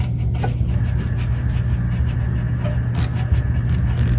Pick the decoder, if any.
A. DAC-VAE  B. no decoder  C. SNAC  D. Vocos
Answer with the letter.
B